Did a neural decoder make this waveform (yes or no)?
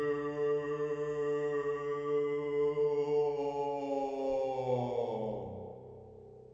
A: no